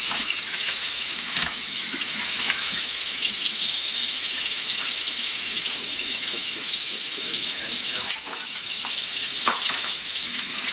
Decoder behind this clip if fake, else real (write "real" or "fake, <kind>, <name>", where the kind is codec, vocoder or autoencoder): fake, autoencoder, DAC-VAE